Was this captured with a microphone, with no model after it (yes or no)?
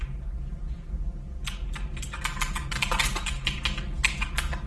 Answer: yes